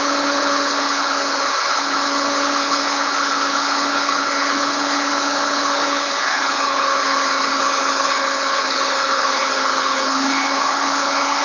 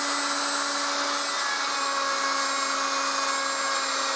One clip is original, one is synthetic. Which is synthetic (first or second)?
first